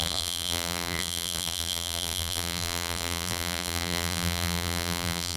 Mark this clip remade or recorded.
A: remade